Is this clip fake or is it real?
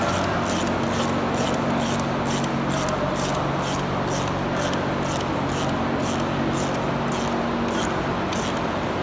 real